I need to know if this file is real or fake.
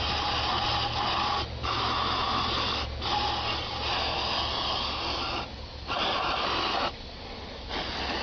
real